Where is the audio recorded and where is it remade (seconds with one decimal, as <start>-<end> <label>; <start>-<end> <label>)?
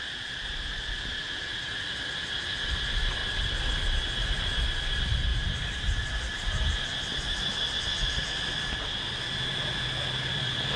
0.0-5.3 recorded; 5.3-7.8 remade; 7.8-10.8 recorded